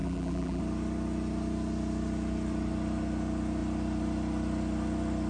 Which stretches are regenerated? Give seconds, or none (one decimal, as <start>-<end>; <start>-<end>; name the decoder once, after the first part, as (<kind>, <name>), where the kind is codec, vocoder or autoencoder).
0.0-0.6 (vocoder, BigVGAN v2)

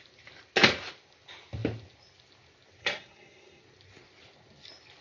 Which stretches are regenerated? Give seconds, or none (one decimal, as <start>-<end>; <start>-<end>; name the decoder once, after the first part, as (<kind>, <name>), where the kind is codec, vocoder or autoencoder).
2.8-3.6 (codec, SNAC)

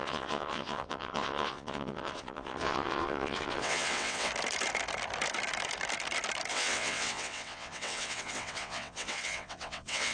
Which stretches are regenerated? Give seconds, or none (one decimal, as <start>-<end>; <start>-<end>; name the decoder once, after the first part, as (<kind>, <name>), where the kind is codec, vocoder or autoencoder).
0.0-4.3 (vocoder, WaveNeXt); 6.5-10.1

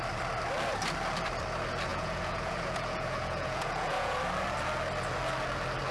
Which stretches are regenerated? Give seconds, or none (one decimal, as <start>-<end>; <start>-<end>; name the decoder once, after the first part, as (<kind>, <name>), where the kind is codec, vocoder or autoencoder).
1.9-4.2 (vocoder, Vocos)

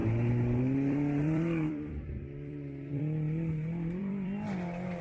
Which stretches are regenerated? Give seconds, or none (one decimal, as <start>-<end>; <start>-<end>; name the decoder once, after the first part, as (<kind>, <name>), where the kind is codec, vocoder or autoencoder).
0.0-3.0 (vocoder, BigVGAN v2); 4.0-4.5

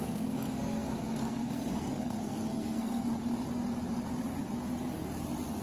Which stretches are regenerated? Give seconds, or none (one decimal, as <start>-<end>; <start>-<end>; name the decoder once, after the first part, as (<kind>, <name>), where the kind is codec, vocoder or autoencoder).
0.0-3.1 (codec, SNAC)

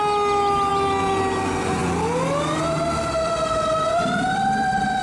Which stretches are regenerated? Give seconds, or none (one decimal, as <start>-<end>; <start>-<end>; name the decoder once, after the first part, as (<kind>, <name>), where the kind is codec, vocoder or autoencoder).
1.8-5.0 (vocoder, BigVGAN v2)